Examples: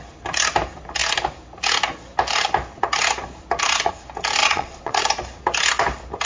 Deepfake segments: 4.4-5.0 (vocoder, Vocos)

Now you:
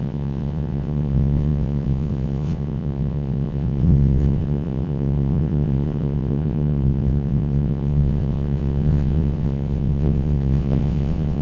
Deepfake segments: 0.0-11.4 (vocoder, WaveNeXt)

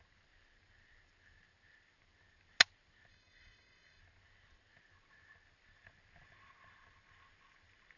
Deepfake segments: 3.1-4.0 (codec, DAC)